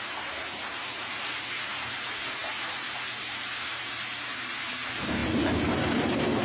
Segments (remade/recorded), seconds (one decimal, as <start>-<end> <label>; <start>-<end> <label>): 0.0-6.4 recorded